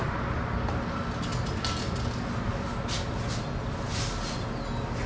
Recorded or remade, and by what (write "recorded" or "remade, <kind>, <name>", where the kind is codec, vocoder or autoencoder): recorded